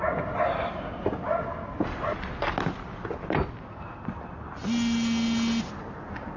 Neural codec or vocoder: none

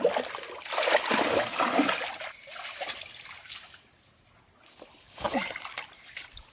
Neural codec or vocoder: none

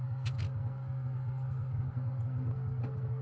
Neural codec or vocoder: codec, SNAC